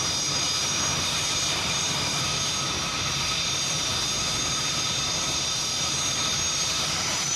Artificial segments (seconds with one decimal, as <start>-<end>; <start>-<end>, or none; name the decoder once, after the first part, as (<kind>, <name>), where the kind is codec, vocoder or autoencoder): 0.0-7.4 (vocoder, BigVGAN v2)

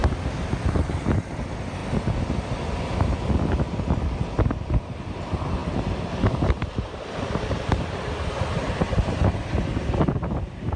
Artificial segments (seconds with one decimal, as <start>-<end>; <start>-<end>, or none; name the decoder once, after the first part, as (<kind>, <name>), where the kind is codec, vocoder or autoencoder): 1.0-1.8 (vocoder, BigVGAN v2); 5.1-10.8